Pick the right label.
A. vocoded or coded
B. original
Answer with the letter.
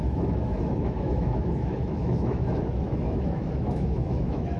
A